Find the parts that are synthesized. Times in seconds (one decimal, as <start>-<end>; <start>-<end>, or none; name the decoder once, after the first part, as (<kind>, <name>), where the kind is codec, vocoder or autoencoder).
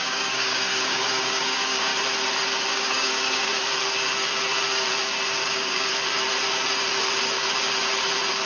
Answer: 0.0-1.9 (codec, DAC); 2.7-3.5; 5.5-5.9